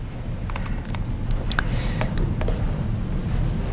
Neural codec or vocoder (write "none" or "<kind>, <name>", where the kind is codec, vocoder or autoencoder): none